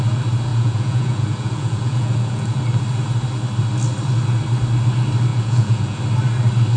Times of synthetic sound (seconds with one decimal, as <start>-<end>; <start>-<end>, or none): 0.5-2.6; 5.3-6.0